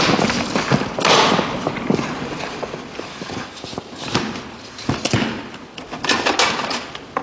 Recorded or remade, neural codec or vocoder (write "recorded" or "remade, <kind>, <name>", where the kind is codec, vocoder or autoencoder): recorded